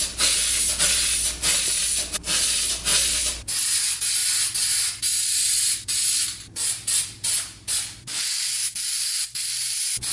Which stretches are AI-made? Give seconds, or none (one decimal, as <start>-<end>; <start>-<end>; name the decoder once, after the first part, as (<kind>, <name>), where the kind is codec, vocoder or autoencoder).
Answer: none

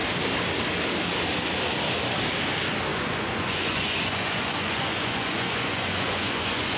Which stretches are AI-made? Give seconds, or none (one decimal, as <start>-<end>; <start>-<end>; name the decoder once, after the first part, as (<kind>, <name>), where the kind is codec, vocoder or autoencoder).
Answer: 2.9-6.8 (vocoder, Vocos)

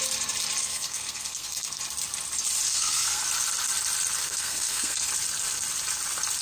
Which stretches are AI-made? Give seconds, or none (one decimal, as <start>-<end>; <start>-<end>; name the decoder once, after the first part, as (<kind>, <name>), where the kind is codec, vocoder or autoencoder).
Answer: 0.6-1.8 (codec, SNAC); 2.7-3.2; 4.2-5.1

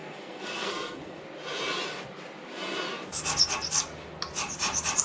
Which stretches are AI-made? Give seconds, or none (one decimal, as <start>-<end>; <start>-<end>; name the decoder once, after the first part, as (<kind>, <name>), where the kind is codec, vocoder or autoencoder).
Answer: 0.0-1.2 (codec, SNAC)

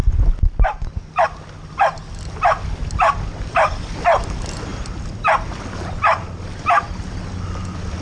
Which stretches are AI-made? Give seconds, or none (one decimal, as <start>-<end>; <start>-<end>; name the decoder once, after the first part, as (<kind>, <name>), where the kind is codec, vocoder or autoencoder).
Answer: none

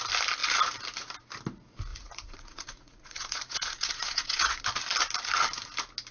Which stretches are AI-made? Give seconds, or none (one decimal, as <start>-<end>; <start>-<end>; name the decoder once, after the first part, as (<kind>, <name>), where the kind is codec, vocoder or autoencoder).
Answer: 1.9-4.6 (vocoder, Vocos)

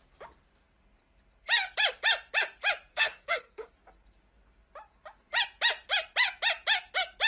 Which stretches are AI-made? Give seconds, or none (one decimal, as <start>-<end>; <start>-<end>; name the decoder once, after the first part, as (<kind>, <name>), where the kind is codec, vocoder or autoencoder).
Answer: 2.9-3.7 (codec, SNAC)